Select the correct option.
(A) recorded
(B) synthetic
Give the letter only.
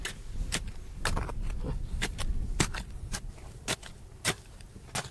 A